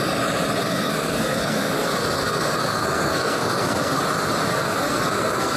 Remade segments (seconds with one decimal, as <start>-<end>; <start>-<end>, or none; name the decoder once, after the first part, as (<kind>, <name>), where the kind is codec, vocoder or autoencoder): 0.6-4.0 (codec, SNAC); 4.5-5.6